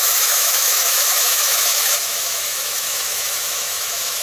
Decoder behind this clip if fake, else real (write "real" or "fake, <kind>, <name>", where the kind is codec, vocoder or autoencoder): fake, autoencoder, DAC-VAE